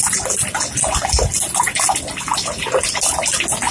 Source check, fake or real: real